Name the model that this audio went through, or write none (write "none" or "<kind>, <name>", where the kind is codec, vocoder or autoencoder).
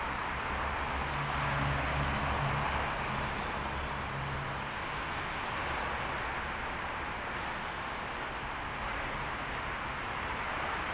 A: none